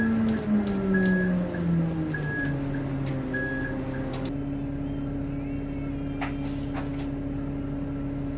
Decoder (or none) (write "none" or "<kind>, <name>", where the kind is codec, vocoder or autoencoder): none